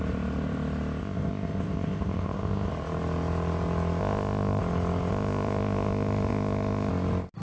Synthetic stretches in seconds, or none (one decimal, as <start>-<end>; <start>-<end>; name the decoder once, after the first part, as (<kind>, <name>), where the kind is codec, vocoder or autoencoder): 1.0-2.7 (codec, ZipCodec); 4.0-4.6; 5.1-6.9